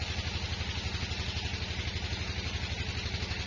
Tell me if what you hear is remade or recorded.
recorded